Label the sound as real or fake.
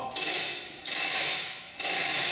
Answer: fake